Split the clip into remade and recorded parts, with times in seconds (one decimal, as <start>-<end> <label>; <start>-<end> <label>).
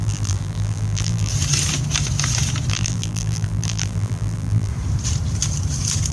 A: 0.0-1.3 remade; 1.3-2.7 recorded; 2.7-4.7 remade; 4.7-6.1 recorded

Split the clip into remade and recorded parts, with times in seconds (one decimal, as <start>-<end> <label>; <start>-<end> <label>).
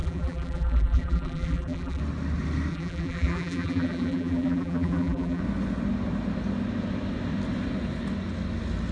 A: 0.0-2.0 remade; 2.0-2.7 recorded; 2.7-5.4 remade; 5.4-8.9 recorded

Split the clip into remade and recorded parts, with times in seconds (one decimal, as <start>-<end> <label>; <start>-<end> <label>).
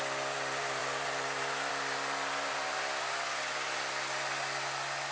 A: 0.0-0.8 recorded; 0.8-1.7 remade; 1.7-5.1 recorded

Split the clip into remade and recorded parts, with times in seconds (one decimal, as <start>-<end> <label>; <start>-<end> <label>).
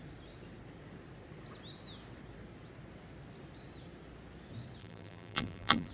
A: 0.0-4.8 recorded; 4.8-5.9 remade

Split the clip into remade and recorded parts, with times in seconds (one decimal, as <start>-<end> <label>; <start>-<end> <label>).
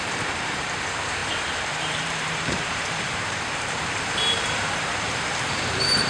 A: 0.0-1.2 remade; 1.2-1.7 recorded; 1.7-6.1 remade